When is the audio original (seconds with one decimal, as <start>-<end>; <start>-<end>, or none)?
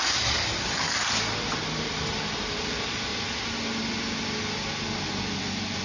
0.0-5.8